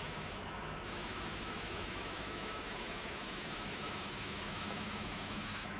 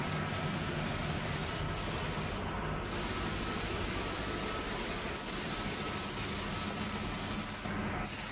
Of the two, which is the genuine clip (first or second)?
second